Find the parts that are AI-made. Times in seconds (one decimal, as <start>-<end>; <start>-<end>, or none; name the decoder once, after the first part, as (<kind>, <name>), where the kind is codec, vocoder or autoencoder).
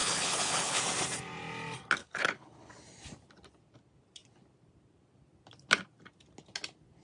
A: 0.0-0.8 (codec, HILCodec); 2.0-2.7